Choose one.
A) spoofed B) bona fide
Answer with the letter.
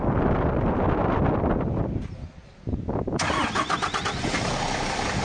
B